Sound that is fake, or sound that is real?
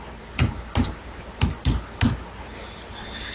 real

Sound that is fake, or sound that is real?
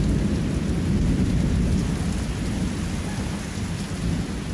real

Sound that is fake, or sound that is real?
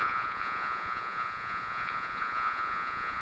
fake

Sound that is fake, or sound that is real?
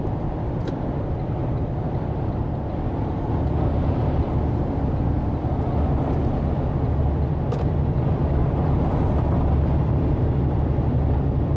fake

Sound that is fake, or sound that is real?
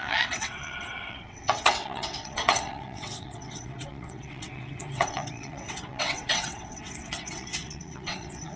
fake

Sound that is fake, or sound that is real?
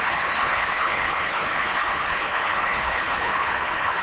fake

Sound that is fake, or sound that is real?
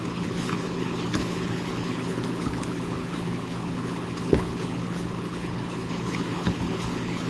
fake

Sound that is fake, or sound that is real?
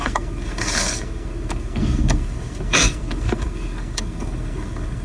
fake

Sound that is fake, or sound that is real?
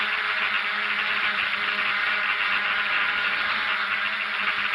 real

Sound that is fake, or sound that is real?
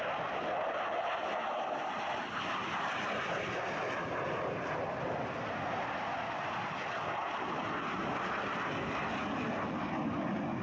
real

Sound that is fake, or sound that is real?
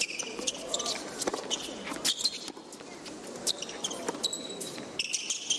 real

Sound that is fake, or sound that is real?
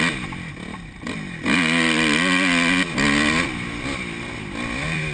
real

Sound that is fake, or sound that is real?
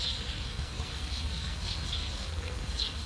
fake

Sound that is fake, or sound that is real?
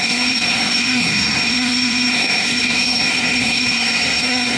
fake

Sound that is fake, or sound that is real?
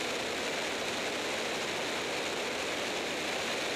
real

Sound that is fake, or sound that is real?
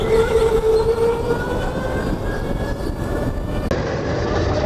real